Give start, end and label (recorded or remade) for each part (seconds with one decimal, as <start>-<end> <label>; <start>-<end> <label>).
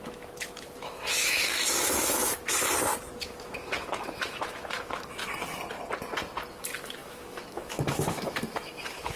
0.0-2.5 remade; 2.5-3.1 recorded; 3.1-5.2 remade; 5.2-6.5 recorded; 6.5-9.2 remade